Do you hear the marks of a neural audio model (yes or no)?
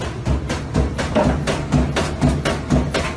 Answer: no